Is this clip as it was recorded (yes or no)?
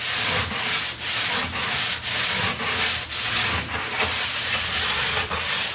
yes